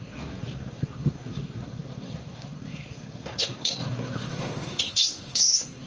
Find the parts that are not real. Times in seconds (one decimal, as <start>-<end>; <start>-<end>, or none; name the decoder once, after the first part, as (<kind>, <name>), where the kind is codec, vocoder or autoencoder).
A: 0.0-5.9 (codec, SNAC)